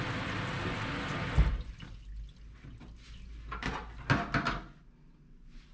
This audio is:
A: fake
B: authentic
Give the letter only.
B